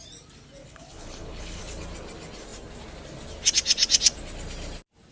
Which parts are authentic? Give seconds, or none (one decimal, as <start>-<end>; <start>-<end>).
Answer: 0.0-0.6; 1.6-5.1